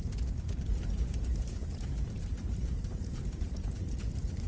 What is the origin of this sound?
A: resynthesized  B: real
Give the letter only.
A